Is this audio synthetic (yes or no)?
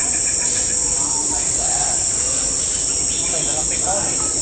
no